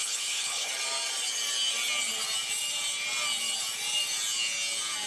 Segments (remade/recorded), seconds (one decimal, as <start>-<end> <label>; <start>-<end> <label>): 0.0-0.7 remade; 0.7-5.1 recorded